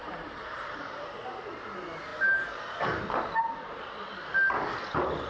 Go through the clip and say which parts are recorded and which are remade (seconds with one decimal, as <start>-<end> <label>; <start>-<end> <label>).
0.0-1.2 remade; 1.2-5.3 recorded